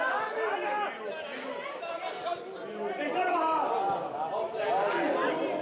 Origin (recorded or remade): recorded